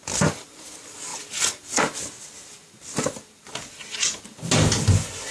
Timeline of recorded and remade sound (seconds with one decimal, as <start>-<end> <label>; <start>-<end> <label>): 0.0-5.3 recorded